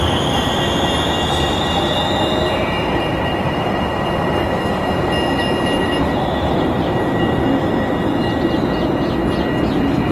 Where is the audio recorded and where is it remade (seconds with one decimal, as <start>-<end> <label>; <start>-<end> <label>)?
0.0-3.1 recorded; 3.1-3.9 remade; 3.9-10.1 recorded